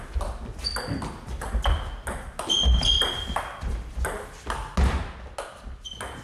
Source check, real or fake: real